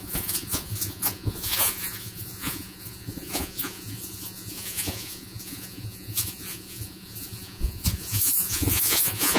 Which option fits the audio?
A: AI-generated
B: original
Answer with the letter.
A